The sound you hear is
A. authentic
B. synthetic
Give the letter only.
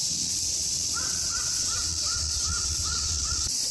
B